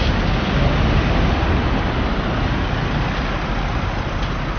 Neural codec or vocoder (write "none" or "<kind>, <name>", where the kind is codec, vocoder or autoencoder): none